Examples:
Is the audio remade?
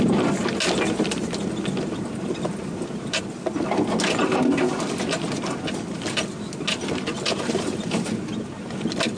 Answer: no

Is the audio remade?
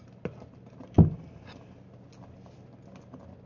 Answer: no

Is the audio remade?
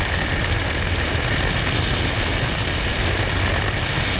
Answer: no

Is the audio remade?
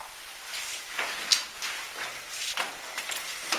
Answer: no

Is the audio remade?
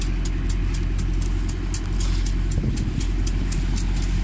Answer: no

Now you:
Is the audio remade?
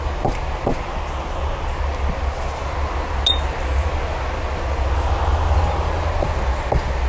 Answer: no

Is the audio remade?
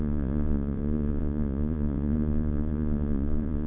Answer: yes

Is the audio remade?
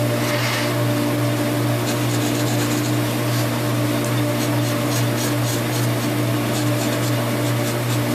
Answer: no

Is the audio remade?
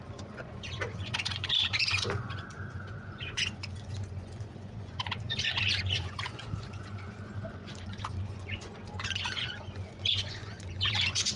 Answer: yes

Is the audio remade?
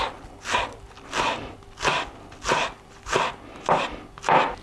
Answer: no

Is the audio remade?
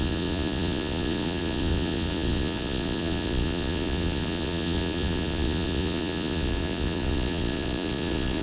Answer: yes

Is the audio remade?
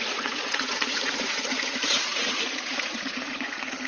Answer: yes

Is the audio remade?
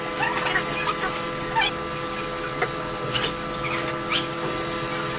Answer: no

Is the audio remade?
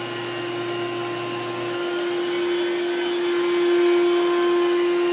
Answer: no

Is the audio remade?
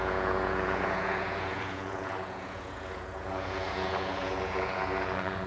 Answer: yes